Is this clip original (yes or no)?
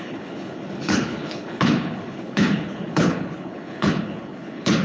no